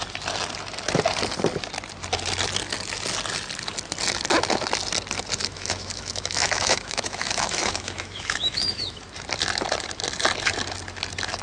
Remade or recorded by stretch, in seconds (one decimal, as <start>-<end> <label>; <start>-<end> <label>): 0.0-5.4 recorded; 5.4-9.0 remade; 9.0-11.4 recorded